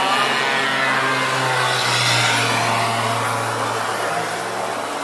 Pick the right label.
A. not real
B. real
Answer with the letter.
B